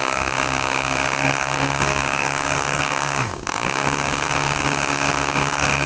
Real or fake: fake